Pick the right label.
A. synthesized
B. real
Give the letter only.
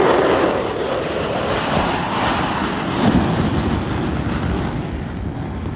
A